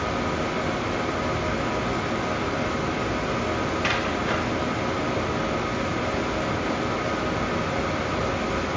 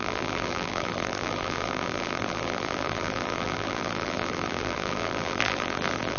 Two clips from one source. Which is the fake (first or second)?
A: second